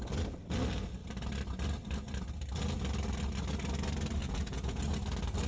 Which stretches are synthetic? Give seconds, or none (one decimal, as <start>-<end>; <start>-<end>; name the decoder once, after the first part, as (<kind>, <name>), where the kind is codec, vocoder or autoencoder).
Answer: 4.2-4.8 (vocoder, Vocos)